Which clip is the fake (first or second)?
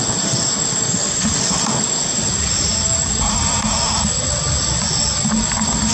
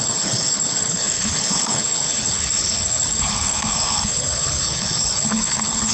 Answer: second